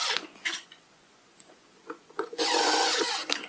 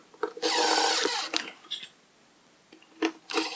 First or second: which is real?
second